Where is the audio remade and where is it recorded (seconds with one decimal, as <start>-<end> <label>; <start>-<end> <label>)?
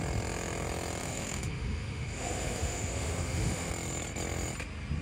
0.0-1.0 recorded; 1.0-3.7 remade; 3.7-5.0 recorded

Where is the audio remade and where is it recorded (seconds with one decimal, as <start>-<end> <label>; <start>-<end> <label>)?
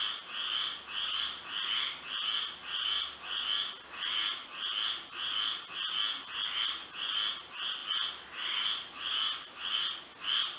0.0-10.6 recorded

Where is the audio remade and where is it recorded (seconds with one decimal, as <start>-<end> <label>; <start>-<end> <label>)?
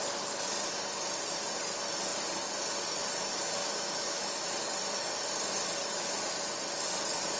0.0-3.6 recorded; 3.6-4.5 remade; 4.5-5.8 recorded; 5.8-6.3 remade; 6.3-7.4 recorded